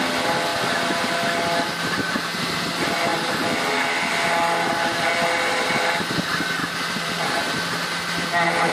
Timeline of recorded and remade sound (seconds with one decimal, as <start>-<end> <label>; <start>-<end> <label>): 0.0-3.1 recorded; 3.1-4.1 remade; 4.1-6.6 recorded; 6.6-7.4 remade; 7.4-8.7 recorded